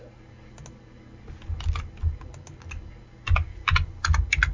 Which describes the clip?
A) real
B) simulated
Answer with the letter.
A